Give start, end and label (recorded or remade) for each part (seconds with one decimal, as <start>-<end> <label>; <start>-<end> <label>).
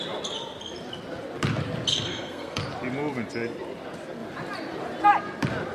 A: 0.0-1.9 recorded; 1.9-2.6 remade; 2.6-5.7 recorded